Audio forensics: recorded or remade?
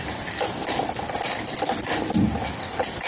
recorded